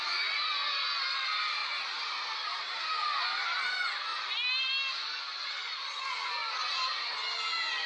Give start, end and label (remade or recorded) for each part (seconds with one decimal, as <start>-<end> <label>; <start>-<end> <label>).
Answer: 0.0-1.6 recorded; 1.6-2.8 remade; 2.8-7.9 recorded